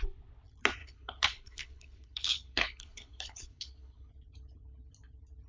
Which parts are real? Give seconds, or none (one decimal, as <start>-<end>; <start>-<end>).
0.0-0.8; 4.1-5.5